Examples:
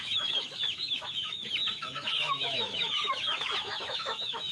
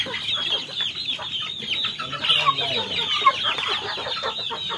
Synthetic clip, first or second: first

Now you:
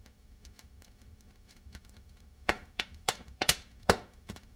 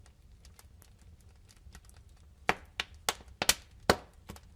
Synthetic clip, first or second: first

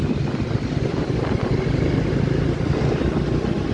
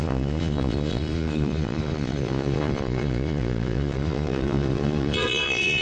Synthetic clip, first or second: second